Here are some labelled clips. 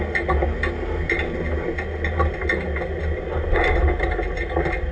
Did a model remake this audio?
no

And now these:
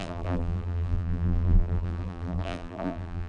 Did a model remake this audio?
yes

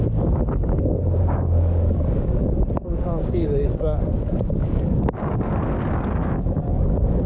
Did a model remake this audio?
yes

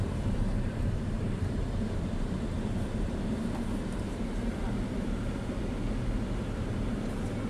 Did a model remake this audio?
yes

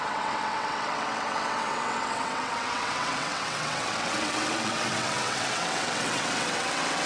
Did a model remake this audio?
yes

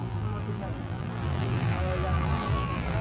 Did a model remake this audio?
yes